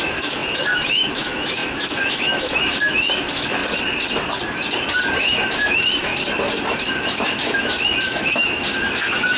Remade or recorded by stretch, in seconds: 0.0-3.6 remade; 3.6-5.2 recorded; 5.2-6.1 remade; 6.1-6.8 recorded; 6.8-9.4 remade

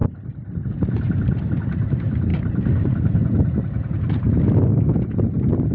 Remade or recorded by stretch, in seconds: 0.0-5.7 recorded

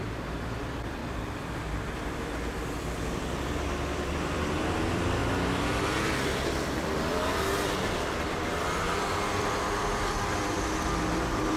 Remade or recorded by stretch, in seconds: 0.0-5.2 remade; 5.2-6.0 recorded; 6.0-11.6 remade